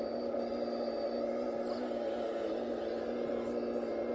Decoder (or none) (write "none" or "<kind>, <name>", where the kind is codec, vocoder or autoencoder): none